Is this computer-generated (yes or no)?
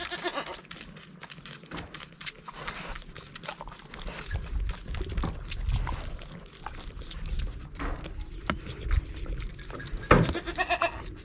no